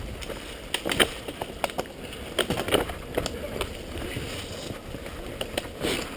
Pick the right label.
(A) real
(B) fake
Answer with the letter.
A